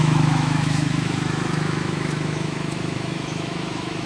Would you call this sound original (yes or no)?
no